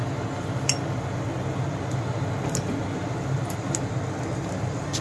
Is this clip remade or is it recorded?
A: recorded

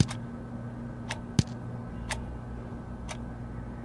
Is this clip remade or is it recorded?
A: recorded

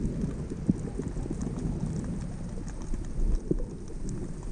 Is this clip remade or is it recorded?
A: recorded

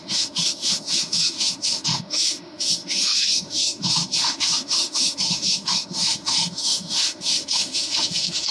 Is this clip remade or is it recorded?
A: remade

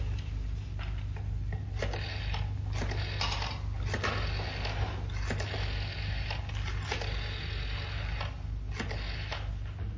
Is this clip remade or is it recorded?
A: recorded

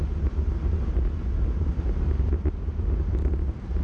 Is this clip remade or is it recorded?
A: recorded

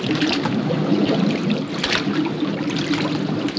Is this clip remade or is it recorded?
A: recorded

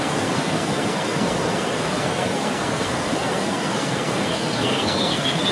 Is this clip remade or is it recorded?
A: remade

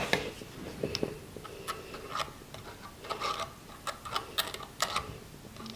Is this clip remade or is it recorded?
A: recorded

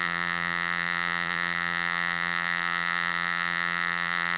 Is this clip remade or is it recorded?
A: remade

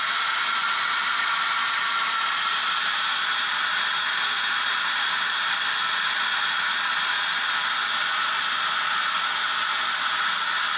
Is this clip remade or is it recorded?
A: recorded